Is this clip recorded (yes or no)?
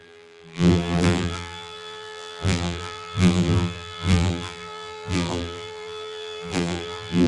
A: no